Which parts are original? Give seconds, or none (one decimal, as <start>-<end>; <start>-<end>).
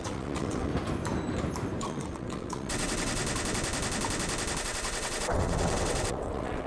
0.7-1.8; 3.2-4.6